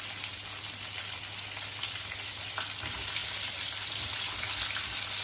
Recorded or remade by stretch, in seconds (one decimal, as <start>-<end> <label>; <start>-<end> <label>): 0.0-3.2 recorded; 3.2-3.9 remade; 3.9-5.2 recorded

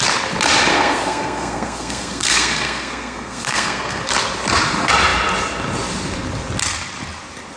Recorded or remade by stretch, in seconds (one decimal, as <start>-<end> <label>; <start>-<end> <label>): 0.0-0.7 recorded; 0.7-4.0 remade; 4.0-7.6 recorded